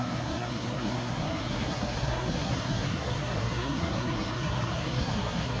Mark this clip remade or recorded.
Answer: remade